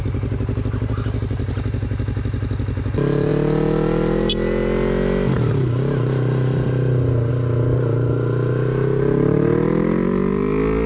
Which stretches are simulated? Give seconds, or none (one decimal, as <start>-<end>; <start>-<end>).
none